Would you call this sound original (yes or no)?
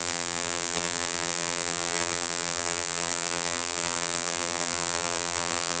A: no